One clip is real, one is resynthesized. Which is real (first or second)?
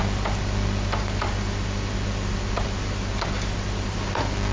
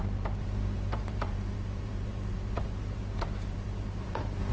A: first